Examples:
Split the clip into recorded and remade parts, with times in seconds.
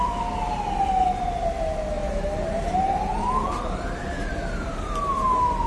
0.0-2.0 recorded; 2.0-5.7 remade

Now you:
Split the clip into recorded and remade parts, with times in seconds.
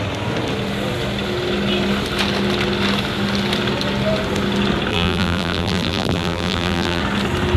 0.0-4.9 recorded; 4.9-7.0 remade; 7.0-7.6 recorded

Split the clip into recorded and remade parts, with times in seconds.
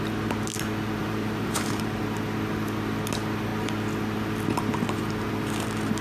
0.0-1.0 recorded; 1.0-2.0 remade; 2.0-6.0 recorded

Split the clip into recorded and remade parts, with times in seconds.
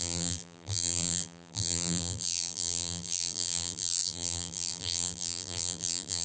0.0-6.2 remade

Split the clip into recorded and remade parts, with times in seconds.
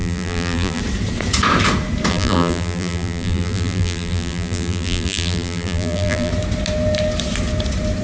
0.0-0.8 remade; 0.8-2.1 recorded; 2.1-6.3 remade; 6.3-8.0 recorded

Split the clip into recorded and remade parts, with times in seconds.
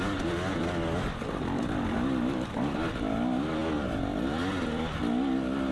0.0-5.7 recorded